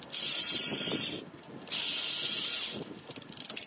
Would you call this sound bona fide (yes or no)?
yes